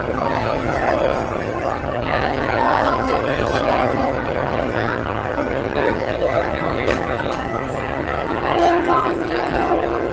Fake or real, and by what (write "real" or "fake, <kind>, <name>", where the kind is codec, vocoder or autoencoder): fake, vocoder, HiFi-GAN